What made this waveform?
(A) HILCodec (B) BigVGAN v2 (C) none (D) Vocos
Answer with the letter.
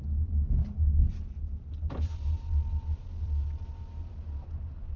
C